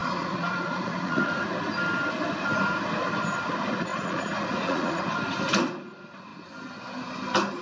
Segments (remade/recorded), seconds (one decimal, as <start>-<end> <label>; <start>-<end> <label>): 0.0-1.4 remade; 1.4-3.9 recorded; 3.9-5.0 remade; 5.0-7.6 recorded